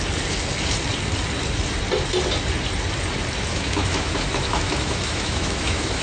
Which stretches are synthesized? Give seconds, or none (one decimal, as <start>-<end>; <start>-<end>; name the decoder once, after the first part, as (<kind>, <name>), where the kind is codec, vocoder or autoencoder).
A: 3.5-6.0 (autoencoder, DAC-VAE)